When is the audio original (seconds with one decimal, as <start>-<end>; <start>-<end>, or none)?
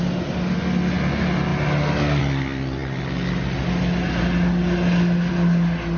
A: 0.0-6.0